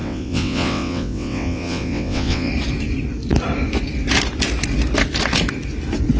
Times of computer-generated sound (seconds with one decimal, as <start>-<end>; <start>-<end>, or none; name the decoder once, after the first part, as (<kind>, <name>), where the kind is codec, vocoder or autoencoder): 0.0-2.5 (vocoder, WaveNeXt)